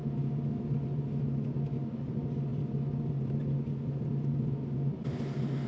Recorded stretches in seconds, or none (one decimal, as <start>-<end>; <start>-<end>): 0.0-5.7